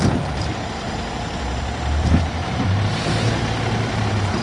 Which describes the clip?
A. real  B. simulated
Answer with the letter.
B